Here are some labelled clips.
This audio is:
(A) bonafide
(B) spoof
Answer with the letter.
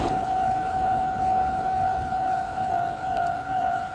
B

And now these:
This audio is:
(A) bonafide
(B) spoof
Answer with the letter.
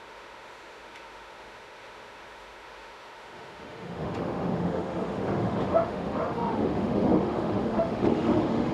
B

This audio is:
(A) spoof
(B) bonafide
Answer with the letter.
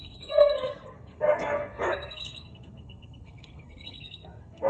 A